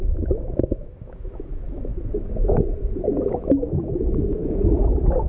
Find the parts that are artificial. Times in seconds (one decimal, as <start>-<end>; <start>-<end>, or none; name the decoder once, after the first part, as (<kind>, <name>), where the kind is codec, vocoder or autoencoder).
0.0-1.9 (autoencoder, DAC-VAE); 3.2-5.3